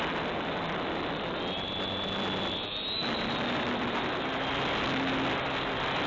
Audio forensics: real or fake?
real